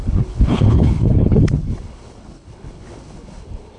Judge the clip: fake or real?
fake